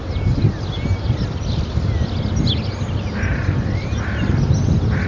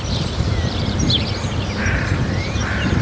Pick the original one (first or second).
first